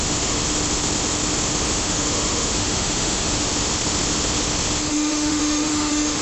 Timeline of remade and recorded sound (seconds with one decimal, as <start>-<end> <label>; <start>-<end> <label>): 0.0-0.4 remade; 0.4-1.8 recorded; 1.8-3.5 remade; 3.5-4.9 recorded; 4.9-6.2 remade